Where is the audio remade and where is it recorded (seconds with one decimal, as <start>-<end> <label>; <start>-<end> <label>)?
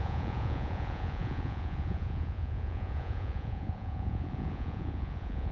0.0-5.5 remade